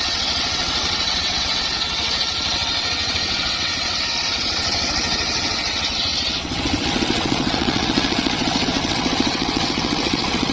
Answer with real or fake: fake